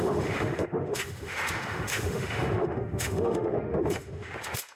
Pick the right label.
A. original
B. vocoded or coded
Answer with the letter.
B